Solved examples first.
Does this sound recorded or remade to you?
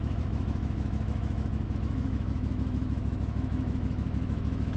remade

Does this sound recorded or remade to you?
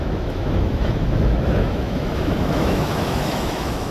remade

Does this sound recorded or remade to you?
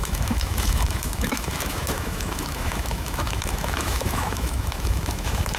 remade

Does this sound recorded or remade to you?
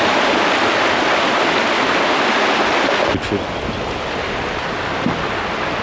recorded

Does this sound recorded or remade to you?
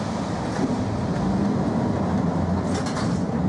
recorded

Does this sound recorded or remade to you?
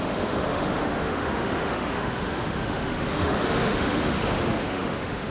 remade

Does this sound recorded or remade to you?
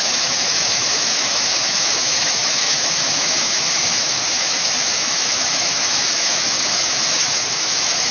remade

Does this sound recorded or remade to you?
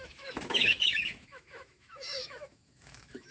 remade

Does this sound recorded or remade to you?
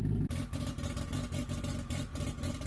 recorded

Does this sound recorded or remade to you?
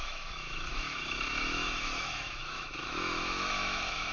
remade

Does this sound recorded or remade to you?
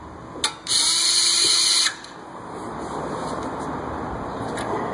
recorded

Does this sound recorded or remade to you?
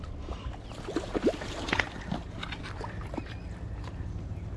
recorded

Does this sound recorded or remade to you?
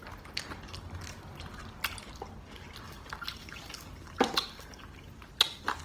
recorded